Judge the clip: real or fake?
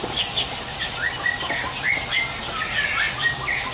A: real